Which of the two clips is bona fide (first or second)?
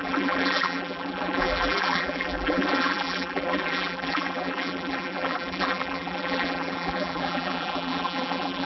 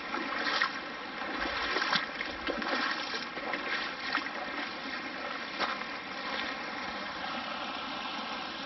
second